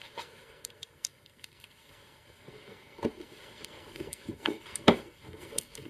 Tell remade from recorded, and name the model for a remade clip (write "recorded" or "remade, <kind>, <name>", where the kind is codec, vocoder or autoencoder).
remade, codec, SNAC